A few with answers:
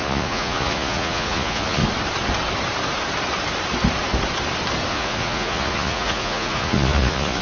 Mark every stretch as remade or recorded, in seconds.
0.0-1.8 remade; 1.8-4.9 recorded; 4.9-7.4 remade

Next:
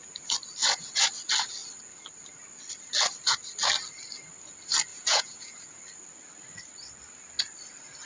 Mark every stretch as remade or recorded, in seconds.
0.0-0.6 recorded; 0.6-1.1 remade; 1.1-4.9 recorded; 4.9-5.8 remade; 5.8-8.1 recorded

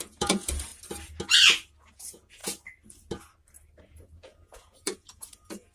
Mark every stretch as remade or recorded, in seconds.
0.0-0.7 remade; 0.7-1.9 recorded; 1.9-2.4 remade; 2.4-3.8 recorded; 3.8-5.7 remade